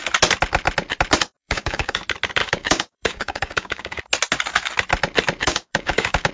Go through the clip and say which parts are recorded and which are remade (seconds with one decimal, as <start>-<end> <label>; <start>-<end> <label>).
0.0-1.4 recorded; 1.4-2.0 remade; 2.0-2.4 recorded; 2.4-4.0 remade; 4.0-5.4 recorded; 5.4-6.3 remade